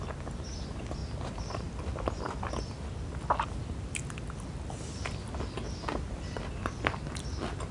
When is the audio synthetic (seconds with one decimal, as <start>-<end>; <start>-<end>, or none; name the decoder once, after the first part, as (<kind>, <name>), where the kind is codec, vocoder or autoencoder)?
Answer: none